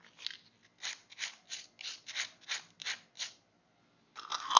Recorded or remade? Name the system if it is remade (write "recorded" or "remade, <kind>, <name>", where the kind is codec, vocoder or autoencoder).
recorded